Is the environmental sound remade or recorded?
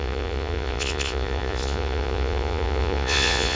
remade